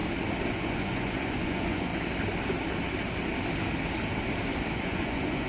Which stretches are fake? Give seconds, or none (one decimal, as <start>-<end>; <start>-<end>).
0.5-1.9; 4.7-5.5